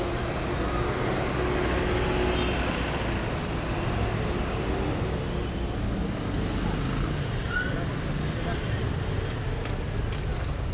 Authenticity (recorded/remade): recorded